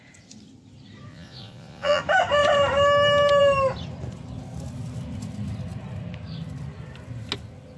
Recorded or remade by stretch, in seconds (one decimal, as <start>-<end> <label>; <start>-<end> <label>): 0.0-1.1 recorded; 1.1-2.0 remade; 2.0-7.8 recorded